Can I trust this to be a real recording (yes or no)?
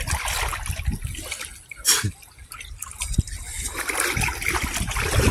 no